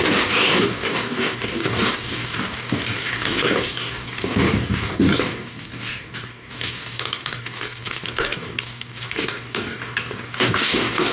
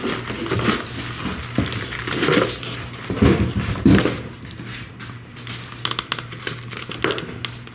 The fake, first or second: first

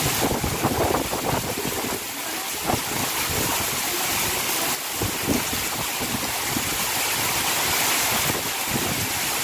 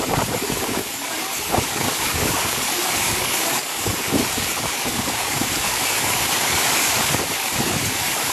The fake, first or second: second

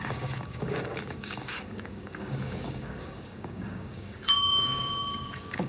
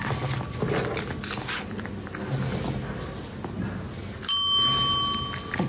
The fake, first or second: first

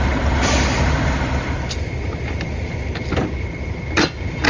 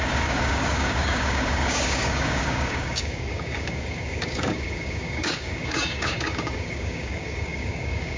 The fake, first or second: second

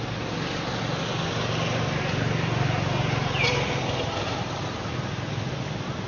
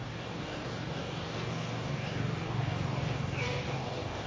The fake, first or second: second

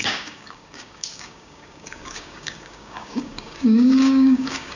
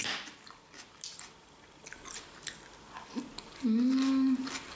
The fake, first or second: first